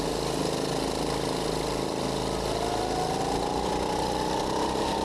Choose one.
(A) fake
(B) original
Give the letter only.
B